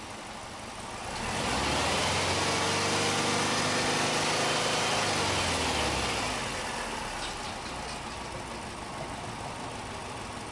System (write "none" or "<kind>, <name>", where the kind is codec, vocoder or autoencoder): none